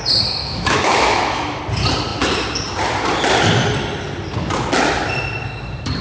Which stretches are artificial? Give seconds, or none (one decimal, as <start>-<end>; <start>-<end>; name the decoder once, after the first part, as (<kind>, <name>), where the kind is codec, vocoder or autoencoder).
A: 0.4-1.6 (autoencoder, DAC-VAE)